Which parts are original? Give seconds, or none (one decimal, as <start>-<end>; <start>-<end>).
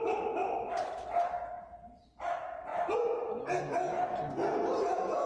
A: 0.0-5.3